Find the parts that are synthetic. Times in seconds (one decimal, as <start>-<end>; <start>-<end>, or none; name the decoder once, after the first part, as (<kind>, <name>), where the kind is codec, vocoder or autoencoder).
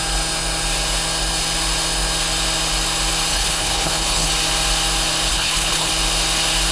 3.3-4.3 (codec, HILCodec); 5.3-5.9